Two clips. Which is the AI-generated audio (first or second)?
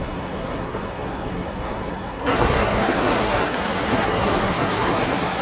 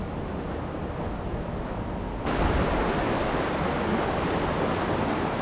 first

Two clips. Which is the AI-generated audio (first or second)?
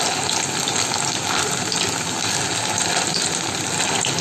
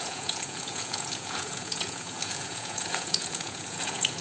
second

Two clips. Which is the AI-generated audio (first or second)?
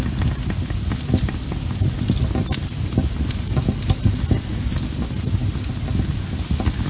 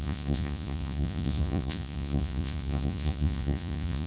second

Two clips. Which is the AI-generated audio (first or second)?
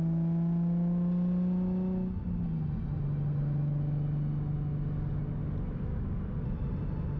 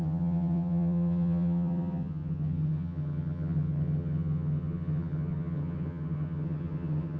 second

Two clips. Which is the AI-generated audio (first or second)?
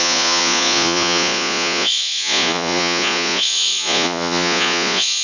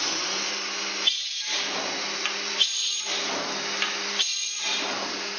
first